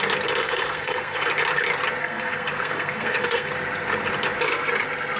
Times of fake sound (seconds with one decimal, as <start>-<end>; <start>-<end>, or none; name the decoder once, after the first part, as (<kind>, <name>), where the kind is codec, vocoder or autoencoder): 0.4-1.3 (codec, SNAC); 2.0-3.5